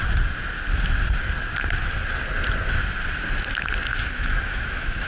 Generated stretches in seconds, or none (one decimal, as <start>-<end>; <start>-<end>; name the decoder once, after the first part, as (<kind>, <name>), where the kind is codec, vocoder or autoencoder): 3.9-5.1 (autoencoder, DAC-VAE)